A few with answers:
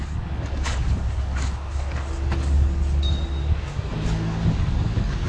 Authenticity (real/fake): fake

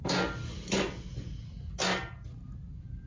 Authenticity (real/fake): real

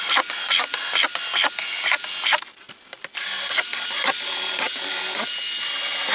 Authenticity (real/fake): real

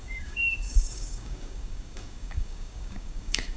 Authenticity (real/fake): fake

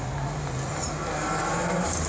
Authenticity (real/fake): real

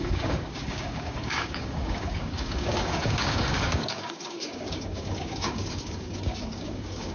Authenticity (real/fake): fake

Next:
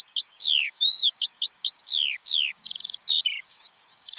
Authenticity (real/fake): fake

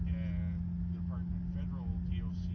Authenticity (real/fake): real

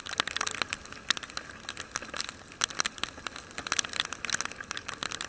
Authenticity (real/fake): real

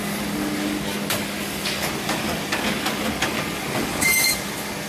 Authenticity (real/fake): fake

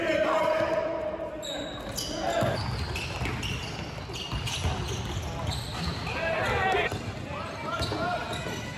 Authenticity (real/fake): real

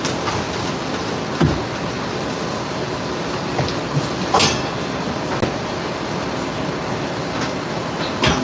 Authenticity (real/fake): real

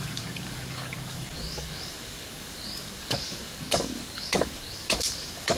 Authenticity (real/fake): fake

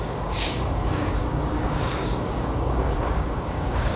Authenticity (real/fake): fake